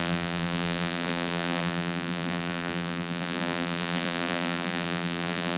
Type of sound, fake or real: fake